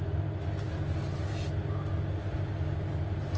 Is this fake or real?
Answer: real